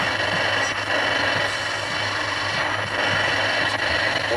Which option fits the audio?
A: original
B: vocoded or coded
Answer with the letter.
A